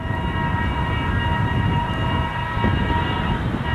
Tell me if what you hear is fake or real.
real